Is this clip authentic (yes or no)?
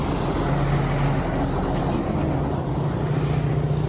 yes